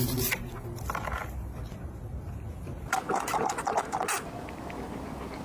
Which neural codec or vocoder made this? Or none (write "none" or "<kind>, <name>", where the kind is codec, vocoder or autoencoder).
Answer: none